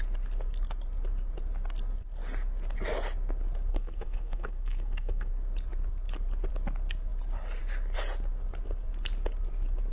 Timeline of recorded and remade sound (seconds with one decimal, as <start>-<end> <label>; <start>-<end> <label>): 0.0-3.7 recorded; 3.7-5.3 remade; 5.3-9.9 recorded